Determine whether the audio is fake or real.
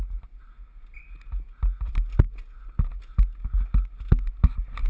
real